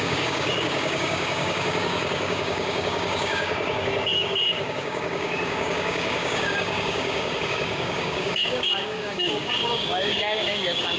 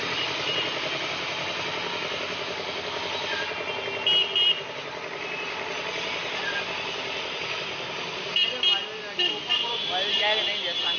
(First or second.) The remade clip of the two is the first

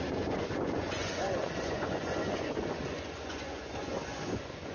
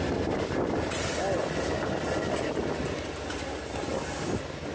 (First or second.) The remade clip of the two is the first